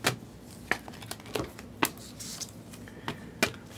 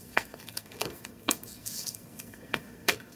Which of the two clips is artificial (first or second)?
second